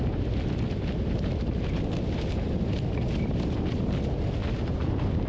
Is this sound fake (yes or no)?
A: no